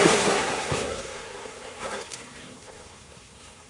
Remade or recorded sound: remade